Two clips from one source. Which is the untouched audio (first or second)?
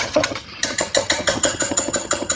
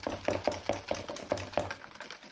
second